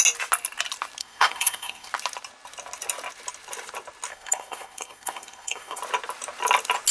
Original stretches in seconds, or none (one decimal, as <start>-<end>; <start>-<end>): 0.0-1.0; 1.9-4.1; 5.8-6.9